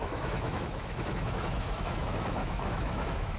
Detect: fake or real fake